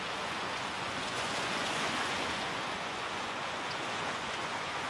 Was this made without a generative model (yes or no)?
no